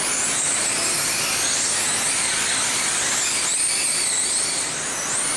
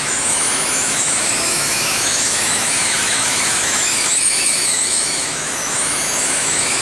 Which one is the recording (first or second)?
first